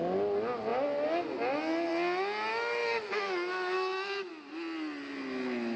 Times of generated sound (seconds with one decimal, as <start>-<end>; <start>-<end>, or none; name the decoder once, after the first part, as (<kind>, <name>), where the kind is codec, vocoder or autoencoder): 2.5-4.3 (autoencoder, DAC-VAE)